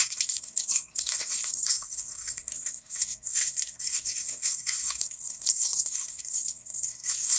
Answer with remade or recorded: remade